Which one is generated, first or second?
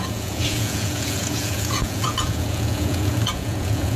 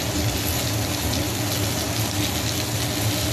first